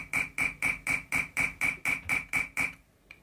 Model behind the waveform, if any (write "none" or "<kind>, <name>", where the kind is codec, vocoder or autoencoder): none